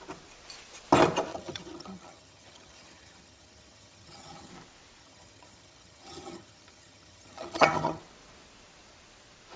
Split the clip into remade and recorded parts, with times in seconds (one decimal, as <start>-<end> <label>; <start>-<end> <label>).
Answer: 0.0-1.3 recorded; 1.3-4.5 remade; 4.5-5.0 recorded; 5.0-8.0 remade; 8.0-9.6 recorded